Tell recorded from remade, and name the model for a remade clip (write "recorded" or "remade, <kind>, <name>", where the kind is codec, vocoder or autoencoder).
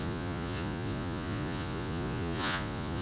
remade, vocoder, Vocos